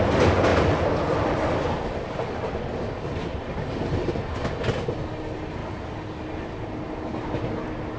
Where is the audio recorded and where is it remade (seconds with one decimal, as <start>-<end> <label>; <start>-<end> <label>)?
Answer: 0.0-8.0 recorded